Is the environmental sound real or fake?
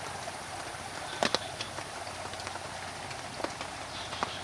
real